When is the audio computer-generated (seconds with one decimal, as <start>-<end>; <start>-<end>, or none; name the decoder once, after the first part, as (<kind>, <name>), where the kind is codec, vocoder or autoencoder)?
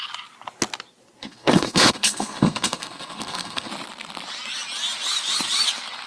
1.2-3.7 (codec, SNAC)